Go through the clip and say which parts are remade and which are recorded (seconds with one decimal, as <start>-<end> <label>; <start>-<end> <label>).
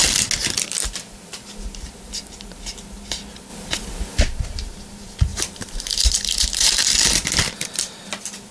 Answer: 0.0-5.3 recorded; 5.3-7.3 remade; 7.3-8.5 recorded